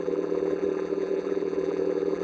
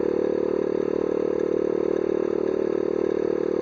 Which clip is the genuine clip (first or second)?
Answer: second